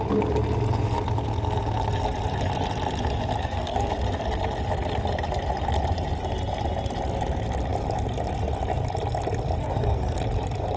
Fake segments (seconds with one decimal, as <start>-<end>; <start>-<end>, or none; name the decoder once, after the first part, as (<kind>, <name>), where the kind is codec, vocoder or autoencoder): 3.4-3.9 (codec, SNAC); 9.6-10.2